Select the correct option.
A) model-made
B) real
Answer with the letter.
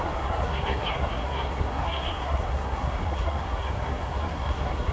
A